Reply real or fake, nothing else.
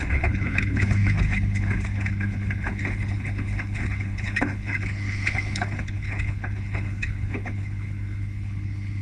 fake